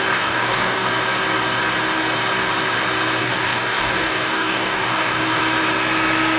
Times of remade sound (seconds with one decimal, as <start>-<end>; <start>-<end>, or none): 0.0-0.9; 3.2-5.4